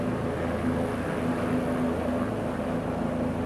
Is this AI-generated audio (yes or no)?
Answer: no